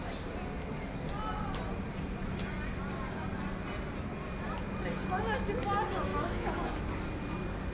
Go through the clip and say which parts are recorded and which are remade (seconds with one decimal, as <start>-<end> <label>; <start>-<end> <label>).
0.0-6.1 recorded; 6.1-6.7 remade; 6.7-7.7 recorded